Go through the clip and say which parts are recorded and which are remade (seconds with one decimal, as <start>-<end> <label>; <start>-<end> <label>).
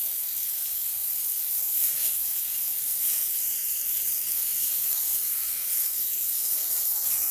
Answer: 0.0-7.3 remade